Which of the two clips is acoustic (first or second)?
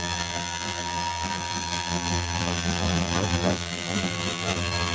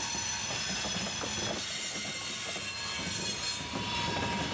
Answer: second